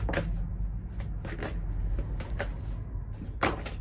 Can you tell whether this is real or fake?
real